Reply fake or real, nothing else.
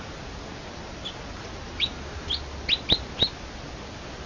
real